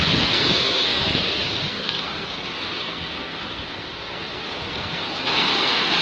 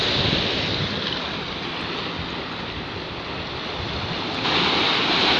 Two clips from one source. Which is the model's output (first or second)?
first